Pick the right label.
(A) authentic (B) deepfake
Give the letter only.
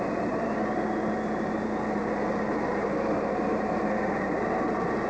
A